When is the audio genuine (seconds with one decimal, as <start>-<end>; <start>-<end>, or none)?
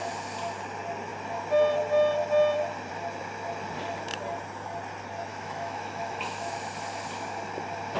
0.0-5.3; 6.7-8.0